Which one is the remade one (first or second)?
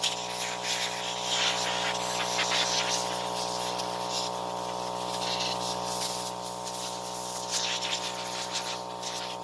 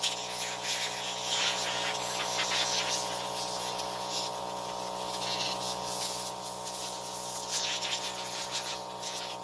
second